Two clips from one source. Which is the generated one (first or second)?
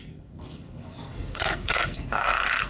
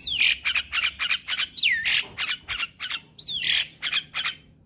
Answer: first